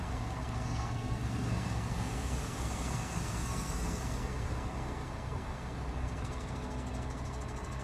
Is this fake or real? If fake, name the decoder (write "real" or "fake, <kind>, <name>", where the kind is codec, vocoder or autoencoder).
fake, codec, SNAC